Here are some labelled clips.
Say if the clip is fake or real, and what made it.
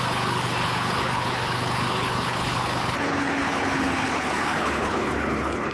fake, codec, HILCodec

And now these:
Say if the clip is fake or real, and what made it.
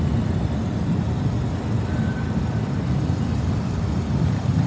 real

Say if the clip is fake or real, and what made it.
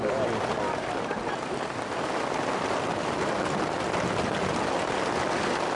real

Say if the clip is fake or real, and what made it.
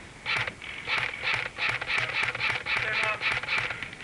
real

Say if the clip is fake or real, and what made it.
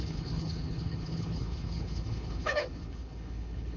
fake, codec, HILCodec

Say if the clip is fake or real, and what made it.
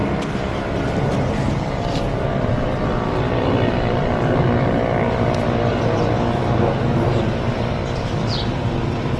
real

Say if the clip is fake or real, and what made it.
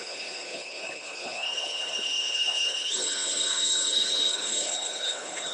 fake, codec, HILCodec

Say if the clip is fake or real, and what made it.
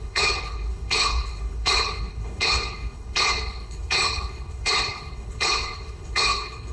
fake, codec, HILCodec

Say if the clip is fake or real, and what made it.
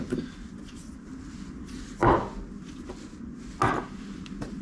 real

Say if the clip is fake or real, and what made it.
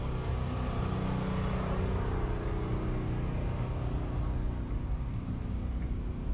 real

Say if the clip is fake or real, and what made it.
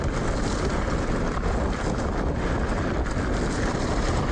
real